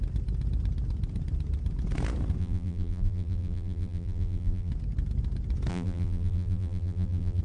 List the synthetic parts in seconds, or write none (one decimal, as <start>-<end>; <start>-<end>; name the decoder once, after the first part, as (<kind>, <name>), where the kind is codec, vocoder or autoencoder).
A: 2.4-4.7 (vocoder, BigVGAN v2); 5.7-7.4